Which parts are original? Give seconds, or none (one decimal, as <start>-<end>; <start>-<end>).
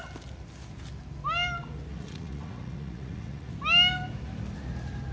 0.0-1.9; 3.5-5.1